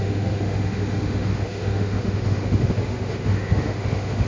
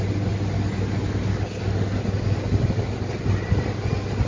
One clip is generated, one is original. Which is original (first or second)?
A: second